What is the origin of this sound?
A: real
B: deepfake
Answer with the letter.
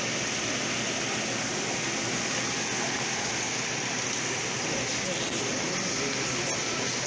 A